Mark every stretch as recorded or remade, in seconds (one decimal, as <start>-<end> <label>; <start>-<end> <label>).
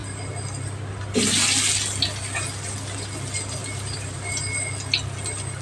0.0-3.6 recorded; 3.6-4.4 remade; 4.4-5.6 recorded